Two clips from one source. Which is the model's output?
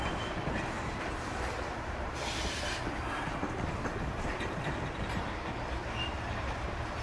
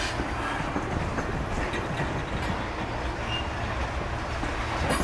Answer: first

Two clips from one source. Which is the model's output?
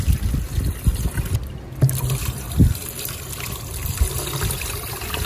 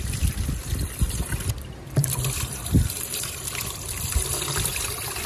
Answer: second